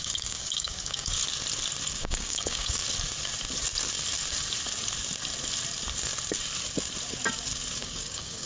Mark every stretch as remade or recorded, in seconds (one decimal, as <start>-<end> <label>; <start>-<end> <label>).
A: 0.0-1.2 remade; 1.2-1.9 recorded; 1.9-2.8 remade; 2.8-7.8 recorded; 7.8-8.5 remade